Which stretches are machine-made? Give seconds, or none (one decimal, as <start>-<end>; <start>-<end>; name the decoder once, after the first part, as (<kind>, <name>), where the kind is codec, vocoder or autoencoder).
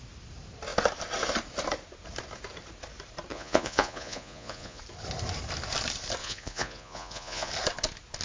3.3-4.8 (vocoder, Vocos); 6.2-7.5